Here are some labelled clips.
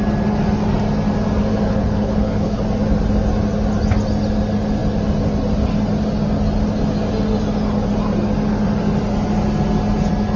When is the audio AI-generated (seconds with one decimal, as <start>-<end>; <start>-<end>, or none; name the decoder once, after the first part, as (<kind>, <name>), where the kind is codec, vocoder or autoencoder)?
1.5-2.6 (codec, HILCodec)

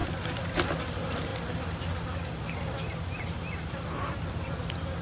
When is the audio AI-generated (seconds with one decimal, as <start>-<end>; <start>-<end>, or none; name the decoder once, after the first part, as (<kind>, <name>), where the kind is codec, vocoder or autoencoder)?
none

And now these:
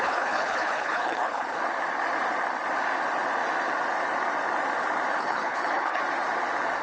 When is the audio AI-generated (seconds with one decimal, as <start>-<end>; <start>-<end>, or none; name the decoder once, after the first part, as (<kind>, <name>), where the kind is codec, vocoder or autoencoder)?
0.0-1.6 (codec, HILCodec); 5.2-6.0